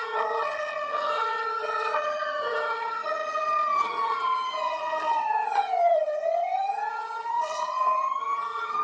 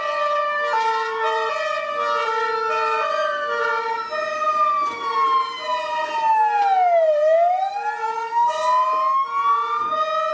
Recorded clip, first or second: second